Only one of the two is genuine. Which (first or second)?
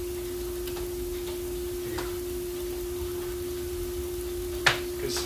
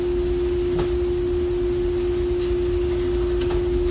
second